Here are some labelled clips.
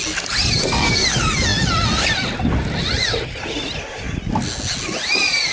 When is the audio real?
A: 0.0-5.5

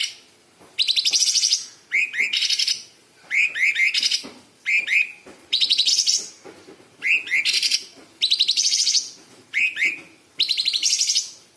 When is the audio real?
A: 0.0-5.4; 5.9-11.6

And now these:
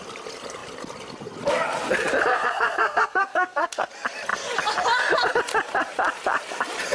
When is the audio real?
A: 0.0-2.3; 3.9-6.9

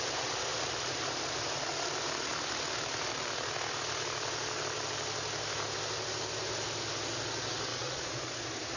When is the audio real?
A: 0.0-7.7; 8.3-8.8

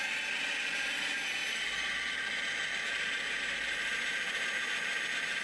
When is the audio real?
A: 0.0-5.4

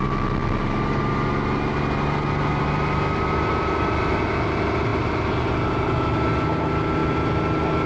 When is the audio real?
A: 0.0-7.9

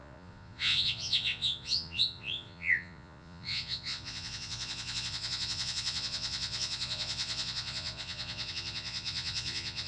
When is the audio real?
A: none